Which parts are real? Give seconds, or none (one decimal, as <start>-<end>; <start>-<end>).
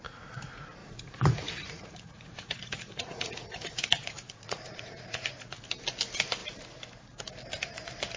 0.0-0.8; 5.6-8.2